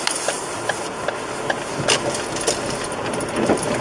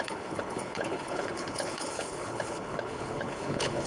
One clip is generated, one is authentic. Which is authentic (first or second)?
first